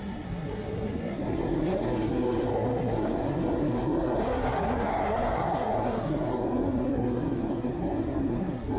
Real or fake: fake